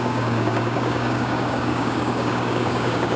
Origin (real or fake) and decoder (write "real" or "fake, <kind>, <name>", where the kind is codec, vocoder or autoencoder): fake, codec, DAC